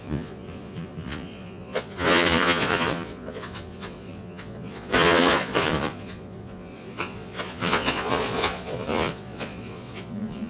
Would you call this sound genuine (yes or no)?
no